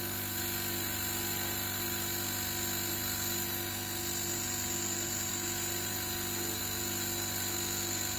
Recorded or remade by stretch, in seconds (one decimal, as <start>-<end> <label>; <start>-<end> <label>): 0.0-8.2 recorded

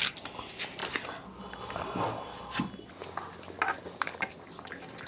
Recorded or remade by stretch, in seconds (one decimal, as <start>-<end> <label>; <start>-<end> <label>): 0.0-5.1 recorded

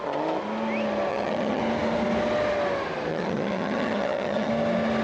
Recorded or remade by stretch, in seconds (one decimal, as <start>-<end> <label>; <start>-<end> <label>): 0.0-1.1 recorded; 1.1-1.6 remade; 1.6-3.1 recorded; 3.1-4.5 remade; 4.5-5.0 recorded

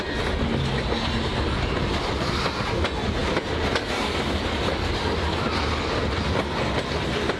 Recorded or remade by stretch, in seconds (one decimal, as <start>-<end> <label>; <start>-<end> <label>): 0.0-7.4 recorded

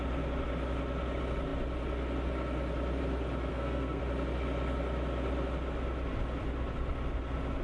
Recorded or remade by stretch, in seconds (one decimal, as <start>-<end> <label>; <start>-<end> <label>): 0.0-3.5 recorded; 3.5-4.0 remade; 4.0-7.6 recorded

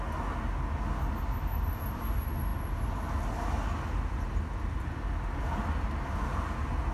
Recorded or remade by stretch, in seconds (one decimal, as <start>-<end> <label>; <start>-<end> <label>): 0.0-6.9 recorded

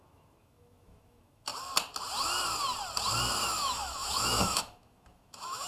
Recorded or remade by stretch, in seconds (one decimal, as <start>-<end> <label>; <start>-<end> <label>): 0.0-1.5 remade; 1.5-3.4 recorded; 3.4-5.7 remade

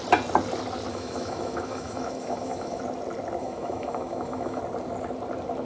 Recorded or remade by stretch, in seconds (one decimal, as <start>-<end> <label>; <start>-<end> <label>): 0.0-0.9 recorded; 0.9-2.8 remade; 2.8-3.4 recorded; 3.4-4.6 remade; 4.6-5.7 recorded